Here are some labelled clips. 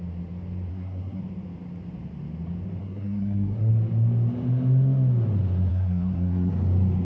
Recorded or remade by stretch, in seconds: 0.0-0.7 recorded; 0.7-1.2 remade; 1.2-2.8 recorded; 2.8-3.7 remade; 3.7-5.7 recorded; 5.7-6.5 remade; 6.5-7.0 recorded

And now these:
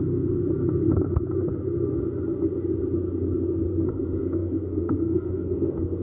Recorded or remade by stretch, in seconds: 0.0-0.4 remade; 0.4-3.9 recorded; 3.9-6.0 remade

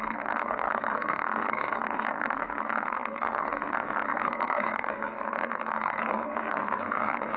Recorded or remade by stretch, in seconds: 0.0-7.4 remade

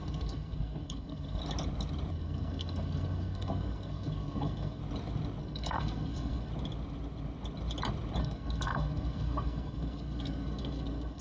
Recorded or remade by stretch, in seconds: 0.0-1.4 remade; 1.4-2.1 recorded; 2.1-4.8 remade; 4.8-5.4 recorded; 5.4-6.5 remade; 6.5-8.2 recorded; 8.2-11.2 remade